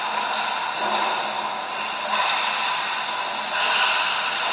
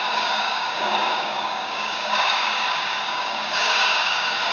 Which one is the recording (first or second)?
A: first